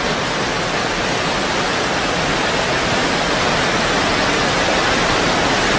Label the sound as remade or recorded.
recorded